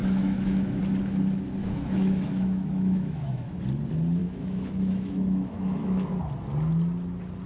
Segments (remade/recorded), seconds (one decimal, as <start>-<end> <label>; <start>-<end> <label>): 0.0-0.8 remade; 0.8-1.6 recorded; 1.6-3.6 remade; 3.6-4.2 recorded; 4.2-6.1 remade; 6.1-7.5 recorded